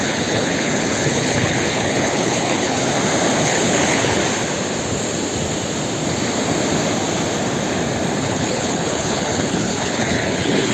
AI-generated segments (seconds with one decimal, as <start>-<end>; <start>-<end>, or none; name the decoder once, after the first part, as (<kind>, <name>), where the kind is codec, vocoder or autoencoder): 0.0-2.9 (codec, HILCodec); 3.4-4.2; 8.2-10.7